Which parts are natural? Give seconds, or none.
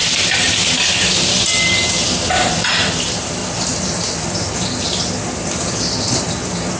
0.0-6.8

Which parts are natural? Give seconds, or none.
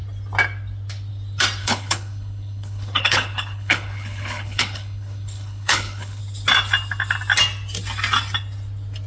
0.0-1.6; 6.2-9.1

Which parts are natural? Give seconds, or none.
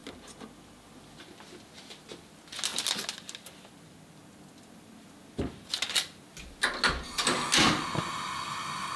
0.0-9.0